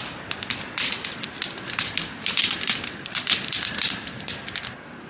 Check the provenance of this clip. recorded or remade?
recorded